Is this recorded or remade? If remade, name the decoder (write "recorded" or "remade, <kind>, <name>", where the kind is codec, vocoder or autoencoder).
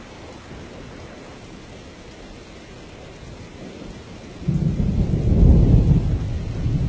recorded